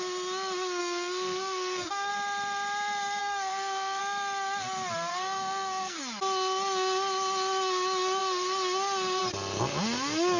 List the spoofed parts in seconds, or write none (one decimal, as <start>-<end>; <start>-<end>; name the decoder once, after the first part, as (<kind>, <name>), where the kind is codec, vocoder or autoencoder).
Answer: 0.8-2.1 (codec, SNAC); 3.2-4.0; 5.1-6.0